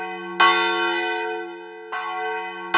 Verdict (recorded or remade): recorded